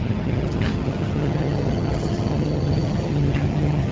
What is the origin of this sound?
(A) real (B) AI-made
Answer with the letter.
B